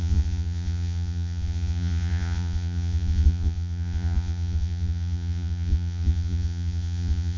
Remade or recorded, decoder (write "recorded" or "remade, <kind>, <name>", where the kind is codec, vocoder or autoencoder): remade, vocoder, Vocos